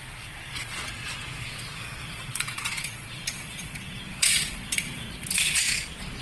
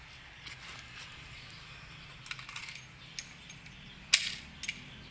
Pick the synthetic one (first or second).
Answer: first